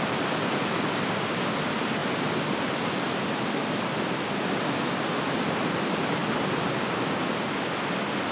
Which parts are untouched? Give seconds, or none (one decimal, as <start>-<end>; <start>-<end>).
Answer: 0.0-8.3